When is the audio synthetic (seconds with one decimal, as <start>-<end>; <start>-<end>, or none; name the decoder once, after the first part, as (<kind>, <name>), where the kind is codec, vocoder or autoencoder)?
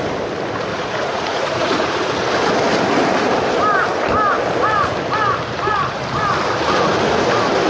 0.7-2.1 (vocoder, Vocos)